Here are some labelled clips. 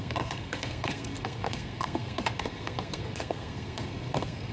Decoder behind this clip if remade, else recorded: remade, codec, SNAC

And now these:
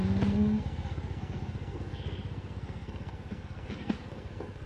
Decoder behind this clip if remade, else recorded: remade, codec, SNAC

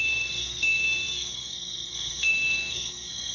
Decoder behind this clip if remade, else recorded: remade, codec, SNAC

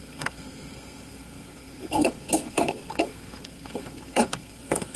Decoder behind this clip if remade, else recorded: remade, codec, SNAC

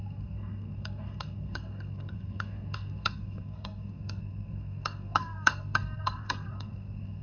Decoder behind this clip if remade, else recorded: remade, codec, SNAC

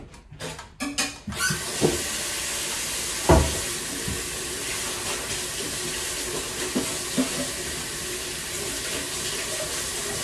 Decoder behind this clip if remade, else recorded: recorded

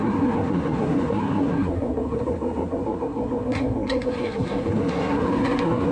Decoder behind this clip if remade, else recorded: remade, codec, SNAC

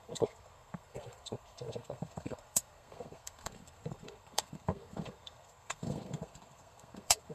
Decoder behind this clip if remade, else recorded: remade, codec, SNAC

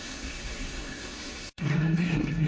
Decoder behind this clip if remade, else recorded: remade, codec, SNAC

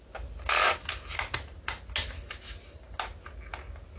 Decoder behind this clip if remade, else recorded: recorded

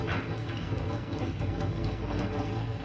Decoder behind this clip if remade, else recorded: remade, codec, SNAC